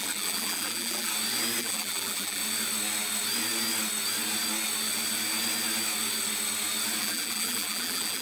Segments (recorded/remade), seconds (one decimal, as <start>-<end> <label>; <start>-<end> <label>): 0.0-1.1 remade; 1.1-1.6 recorded; 1.6-2.4 remade; 2.4-7.0 recorded; 7.0-8.2 remade